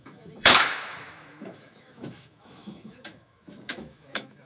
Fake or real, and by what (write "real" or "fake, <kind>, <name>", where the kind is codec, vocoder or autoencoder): fake, autoencoder, DAC-VAE